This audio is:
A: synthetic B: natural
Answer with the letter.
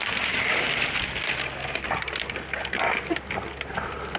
B